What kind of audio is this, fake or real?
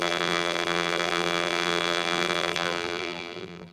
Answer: fake